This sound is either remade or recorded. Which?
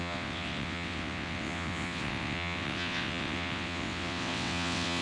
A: remade